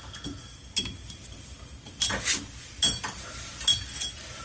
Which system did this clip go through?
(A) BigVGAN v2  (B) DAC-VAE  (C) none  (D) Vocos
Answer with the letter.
C